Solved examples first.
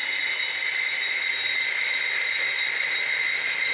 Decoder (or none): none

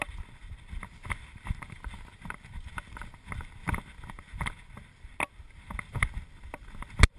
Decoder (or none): none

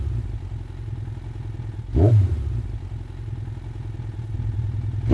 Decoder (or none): none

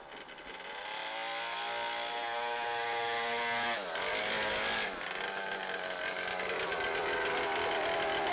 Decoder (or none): none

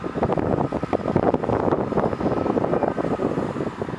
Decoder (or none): none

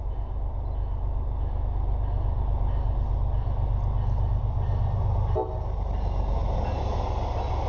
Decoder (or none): none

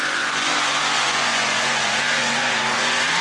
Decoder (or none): vocoder, Vocos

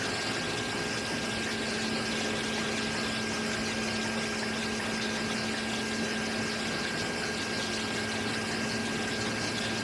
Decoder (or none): none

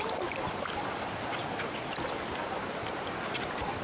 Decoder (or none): none